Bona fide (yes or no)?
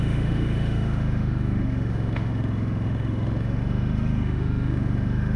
no